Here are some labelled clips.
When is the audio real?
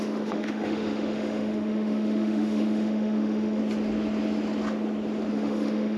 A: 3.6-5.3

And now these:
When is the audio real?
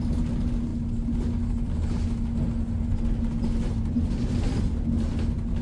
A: 0.0-5.6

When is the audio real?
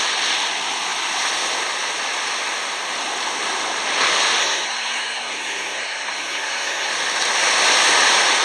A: 0.0-4.4; 6.9-8.4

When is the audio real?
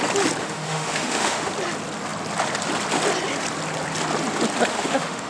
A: 0.0-0.4; 1.5-4.7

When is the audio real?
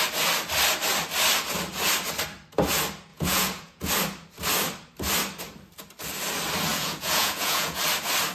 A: 0.0-3.1; 3.9-6.7; 7.8-8.3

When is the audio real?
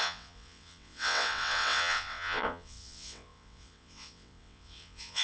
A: none